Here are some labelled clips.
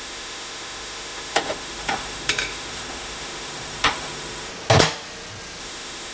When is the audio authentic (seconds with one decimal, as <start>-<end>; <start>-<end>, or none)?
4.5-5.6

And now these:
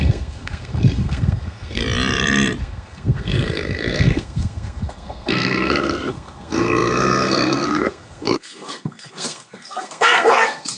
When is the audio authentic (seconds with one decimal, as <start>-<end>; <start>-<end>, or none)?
1.8-2.6

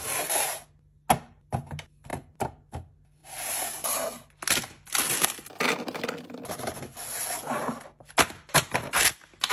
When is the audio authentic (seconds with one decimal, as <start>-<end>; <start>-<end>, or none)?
0.0-2.1; 2.7-9.5